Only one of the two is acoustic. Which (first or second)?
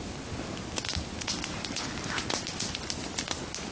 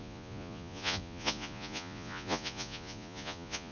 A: first